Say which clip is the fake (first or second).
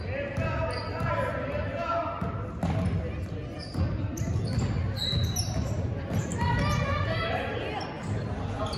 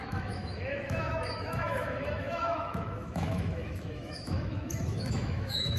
second